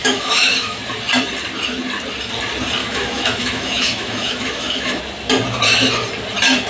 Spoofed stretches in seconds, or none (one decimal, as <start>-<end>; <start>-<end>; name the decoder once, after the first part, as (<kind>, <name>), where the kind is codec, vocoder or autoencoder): 0.0-0.8 (autoencoder, DAC-VAE); 2.8-5.0

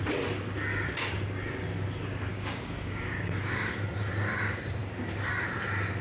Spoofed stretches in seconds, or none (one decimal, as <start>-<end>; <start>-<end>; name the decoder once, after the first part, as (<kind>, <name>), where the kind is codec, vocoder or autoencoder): 2.3-3.7 (codec, DAC)

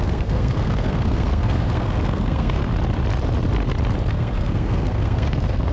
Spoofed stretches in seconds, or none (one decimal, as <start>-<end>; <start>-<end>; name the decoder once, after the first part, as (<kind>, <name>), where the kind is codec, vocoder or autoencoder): 0.0-2.6 (codec, SNAC); 4.1-5.7

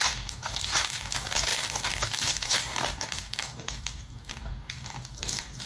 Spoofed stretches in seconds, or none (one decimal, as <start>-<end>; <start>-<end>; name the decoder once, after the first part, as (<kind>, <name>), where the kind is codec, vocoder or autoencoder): 0.0-5.7 (codec, DAC)

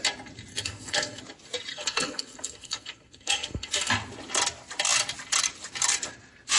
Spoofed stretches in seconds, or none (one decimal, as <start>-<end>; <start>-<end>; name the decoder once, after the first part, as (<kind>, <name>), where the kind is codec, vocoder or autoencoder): 0.5-1.2 (codec, SNAC); 1.7-3.9